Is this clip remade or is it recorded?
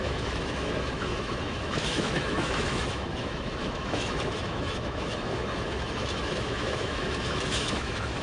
remade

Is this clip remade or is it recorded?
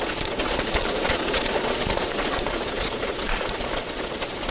remade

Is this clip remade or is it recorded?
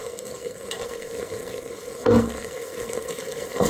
remade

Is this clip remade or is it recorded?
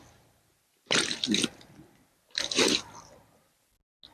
recorded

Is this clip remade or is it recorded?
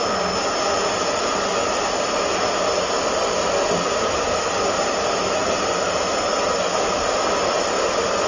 recorded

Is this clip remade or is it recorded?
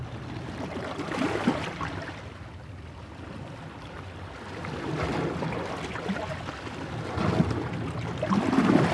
recorded